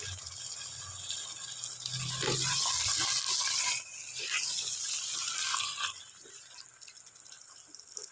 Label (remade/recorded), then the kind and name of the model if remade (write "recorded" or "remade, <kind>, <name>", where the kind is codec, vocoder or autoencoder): recorded